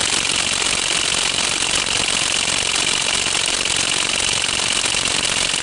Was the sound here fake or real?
real